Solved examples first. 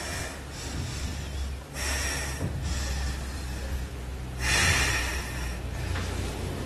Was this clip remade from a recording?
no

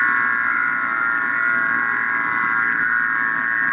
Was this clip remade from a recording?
no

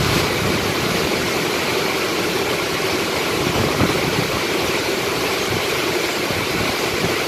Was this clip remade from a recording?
yes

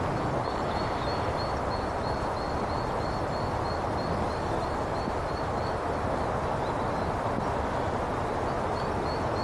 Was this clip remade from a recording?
no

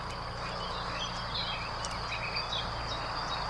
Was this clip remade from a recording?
no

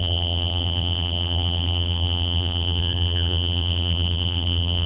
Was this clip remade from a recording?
yes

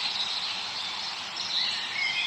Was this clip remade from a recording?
yes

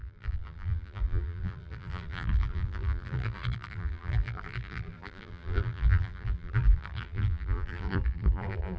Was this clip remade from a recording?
yes